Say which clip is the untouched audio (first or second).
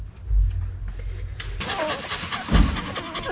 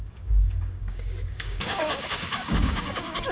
first